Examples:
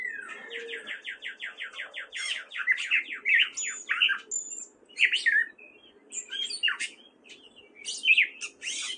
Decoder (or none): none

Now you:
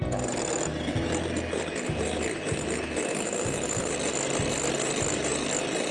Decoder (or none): none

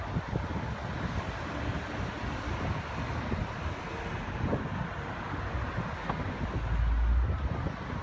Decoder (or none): none